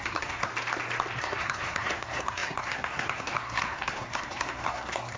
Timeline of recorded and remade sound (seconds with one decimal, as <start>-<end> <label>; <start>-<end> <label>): 0.0-0.5 remade; 0.5-1.2 recorded; 1.2-5.2 remade